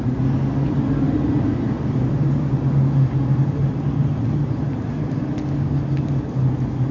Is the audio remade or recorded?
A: recorded